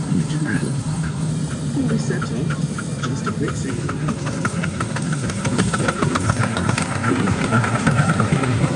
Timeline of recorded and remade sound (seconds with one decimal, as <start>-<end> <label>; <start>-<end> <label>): 0.0-1.3 remade; 1.3-3.7 recorded; 3.7-8.8 remade